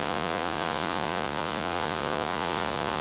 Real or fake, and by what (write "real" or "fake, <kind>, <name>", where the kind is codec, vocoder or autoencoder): fake, vocoder, Vocos